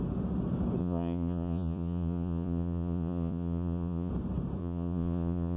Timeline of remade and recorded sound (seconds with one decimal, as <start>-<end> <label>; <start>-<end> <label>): 0.0-0.8 recorded; 0.8-4.1 remade; 4.1-4.6 recorded; 4.6-5.6 remade